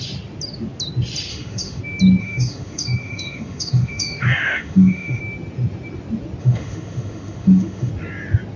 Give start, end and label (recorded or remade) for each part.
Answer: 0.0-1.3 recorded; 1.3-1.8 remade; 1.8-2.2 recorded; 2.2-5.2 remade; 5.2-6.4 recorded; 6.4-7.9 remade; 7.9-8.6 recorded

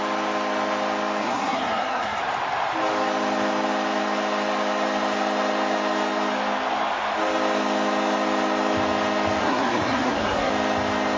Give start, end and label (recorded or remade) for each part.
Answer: 0.0-1.2 recorded; 1.2-2.2 remade; 2.2-9.4 recorded; 9.4-10.5 remade; 10.5-11.2 recorded

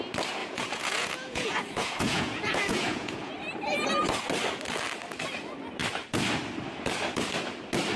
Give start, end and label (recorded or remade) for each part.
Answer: 0.0-0.4 recorded; 0.4-3.3 remade; 3.3-8.0 recorded

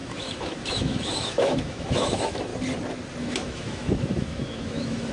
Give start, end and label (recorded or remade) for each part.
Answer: 0.0-2.5 remade; 2.5-3.2 recorded; 3.2-5.1 remade